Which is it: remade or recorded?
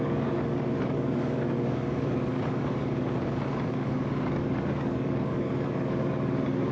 remade